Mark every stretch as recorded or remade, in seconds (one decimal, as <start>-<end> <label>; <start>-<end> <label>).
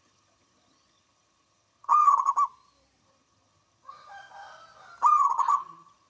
0.0-2.3 remade; 2.3-3.0 recorded; 3.0-3.9 remade; 3.9-5.1 recorded; 5.1-6.1 remade